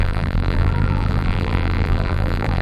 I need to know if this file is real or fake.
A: fake